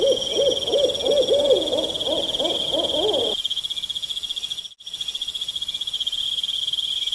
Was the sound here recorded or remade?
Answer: recorded